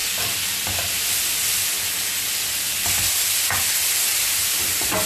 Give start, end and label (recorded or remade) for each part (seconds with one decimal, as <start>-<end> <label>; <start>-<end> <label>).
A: 0.0-4.1 recorded; 4.1-5.1 remade